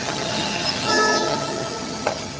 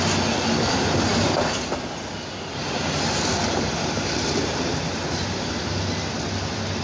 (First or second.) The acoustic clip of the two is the second